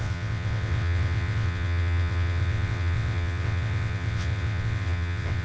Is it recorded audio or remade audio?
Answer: remade